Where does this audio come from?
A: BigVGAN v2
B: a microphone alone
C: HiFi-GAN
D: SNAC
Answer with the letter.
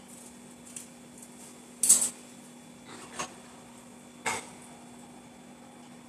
B